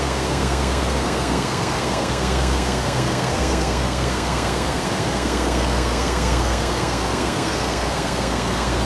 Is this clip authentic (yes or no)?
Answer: no